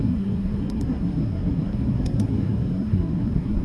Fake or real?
fake